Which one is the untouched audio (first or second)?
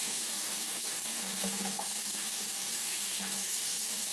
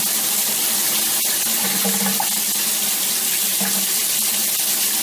second